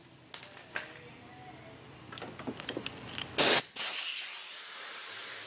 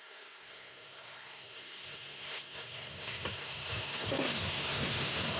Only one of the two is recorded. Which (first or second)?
first